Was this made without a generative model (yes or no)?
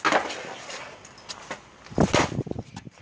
yes